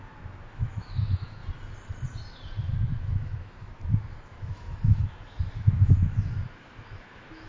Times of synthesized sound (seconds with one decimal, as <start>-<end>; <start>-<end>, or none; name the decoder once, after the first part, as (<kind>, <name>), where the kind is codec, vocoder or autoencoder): 0.0-1.4 (autoencoder, DAC-VAE); 2.7-7.5